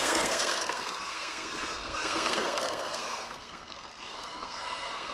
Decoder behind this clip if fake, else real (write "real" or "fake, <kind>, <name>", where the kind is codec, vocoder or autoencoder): fake, codec, SNAC